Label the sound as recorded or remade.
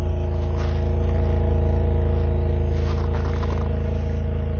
recorded